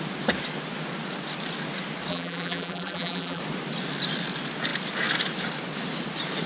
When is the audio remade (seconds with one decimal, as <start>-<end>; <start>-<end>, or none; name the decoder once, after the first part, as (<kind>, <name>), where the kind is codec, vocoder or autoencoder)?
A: 2.1-3.4 (vocoder, BigVGAN v2)